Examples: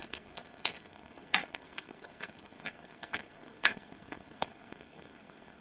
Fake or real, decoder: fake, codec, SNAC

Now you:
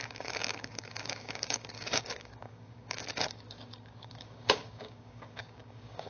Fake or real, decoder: fake, codec, DAC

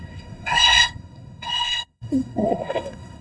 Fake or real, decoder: fake, codec, SNAC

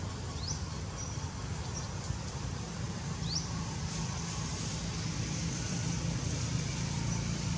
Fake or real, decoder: fake, vocoder, BigVGAN v2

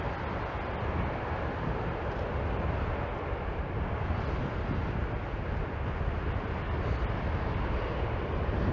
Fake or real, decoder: real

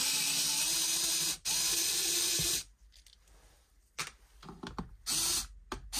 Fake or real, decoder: real